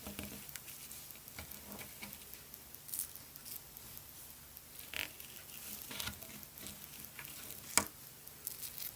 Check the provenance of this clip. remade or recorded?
recorded